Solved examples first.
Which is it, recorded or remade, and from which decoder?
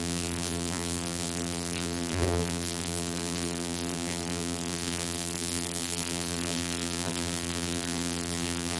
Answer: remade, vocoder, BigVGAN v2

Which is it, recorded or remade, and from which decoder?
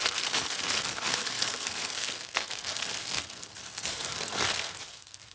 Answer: remade, codec, SNAC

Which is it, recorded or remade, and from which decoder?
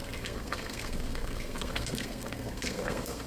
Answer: remade, codec, SNAC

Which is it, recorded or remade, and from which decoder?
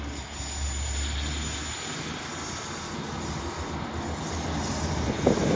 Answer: recorded